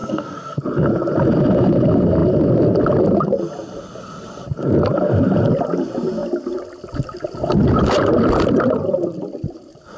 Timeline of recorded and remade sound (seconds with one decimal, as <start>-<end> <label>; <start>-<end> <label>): 0.0-0.6 remade; 0.6-10.0 recorded